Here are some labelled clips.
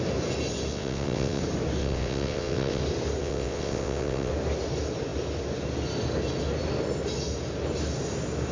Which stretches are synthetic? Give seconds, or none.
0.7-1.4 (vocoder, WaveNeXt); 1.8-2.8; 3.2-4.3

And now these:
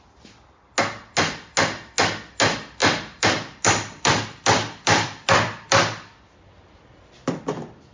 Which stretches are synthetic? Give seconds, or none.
2.8-7.4 (vocoder, BigVGAN v2)

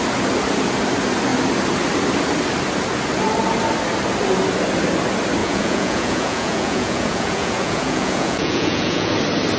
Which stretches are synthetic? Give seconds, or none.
5.4-9.1 (vocoder, Vocos)

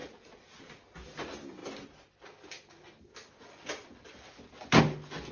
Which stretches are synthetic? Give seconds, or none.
0.0-0.6 (vocoder, Vocos)

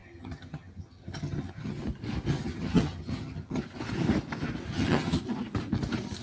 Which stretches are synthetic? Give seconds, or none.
0.0-1.8 (vocoder, HiFi-GAN); 2.3-3.6; 4.7-5.2

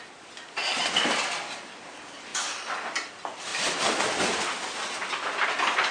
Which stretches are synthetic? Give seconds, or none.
none

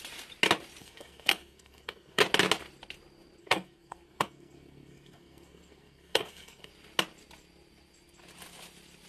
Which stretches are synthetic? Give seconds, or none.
0.8-2.2 (codec, SNAC); 3.4-6.7